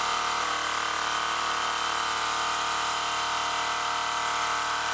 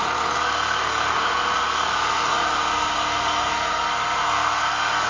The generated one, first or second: second